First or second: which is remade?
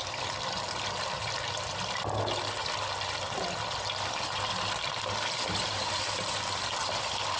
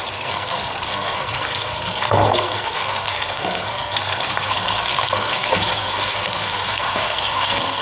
second